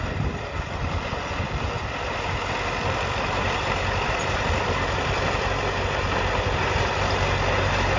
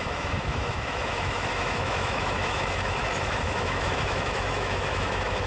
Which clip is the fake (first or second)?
second